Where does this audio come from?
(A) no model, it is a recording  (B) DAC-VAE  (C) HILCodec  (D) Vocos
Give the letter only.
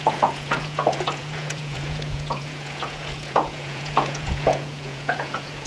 D